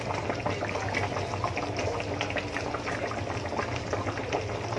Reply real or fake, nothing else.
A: real